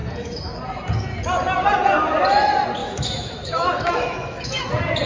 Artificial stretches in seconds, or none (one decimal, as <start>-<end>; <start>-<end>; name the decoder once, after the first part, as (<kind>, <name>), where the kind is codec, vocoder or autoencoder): 0.0-0.6 (autoencoder, DAC-VAE); 2.8-4.6